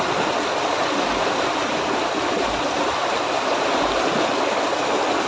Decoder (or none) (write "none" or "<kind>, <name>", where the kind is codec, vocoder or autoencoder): none